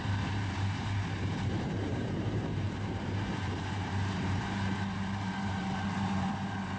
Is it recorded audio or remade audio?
remade